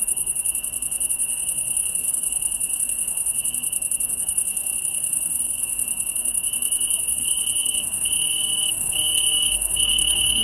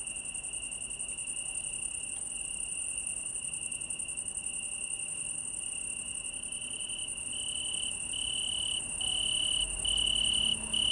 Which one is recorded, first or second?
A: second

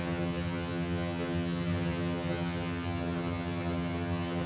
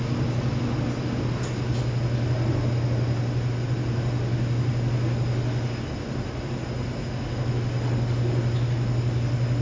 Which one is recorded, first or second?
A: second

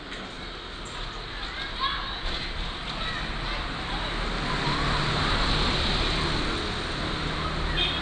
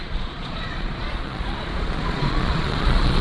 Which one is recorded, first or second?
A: first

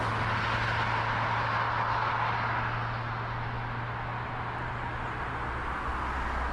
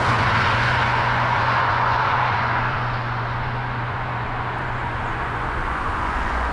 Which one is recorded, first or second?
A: first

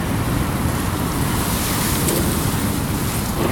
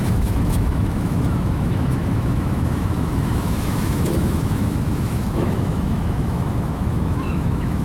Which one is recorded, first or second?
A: first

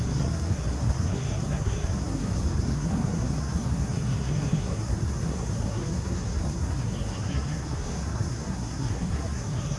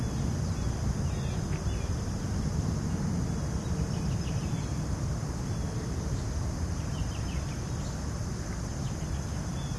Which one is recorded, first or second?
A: second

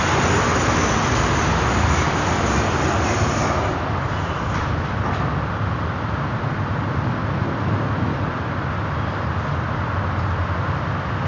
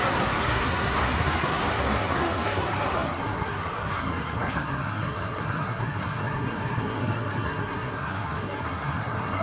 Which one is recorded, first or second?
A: first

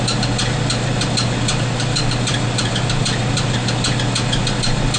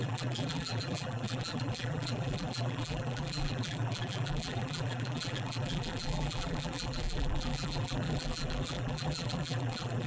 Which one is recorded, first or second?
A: first